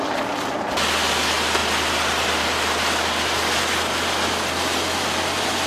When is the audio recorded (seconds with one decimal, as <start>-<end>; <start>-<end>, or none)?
0.0-5.7